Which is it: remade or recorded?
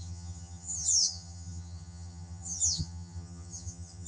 remade